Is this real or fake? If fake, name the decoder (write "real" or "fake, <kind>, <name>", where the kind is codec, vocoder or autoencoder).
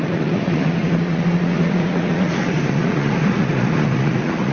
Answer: fake, vocoder, Vocos